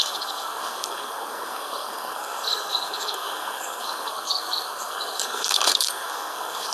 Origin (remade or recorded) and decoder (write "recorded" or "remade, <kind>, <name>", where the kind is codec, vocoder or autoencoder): remade, codec, SNAC